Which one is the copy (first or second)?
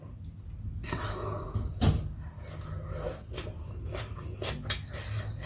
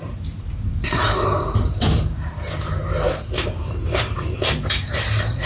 second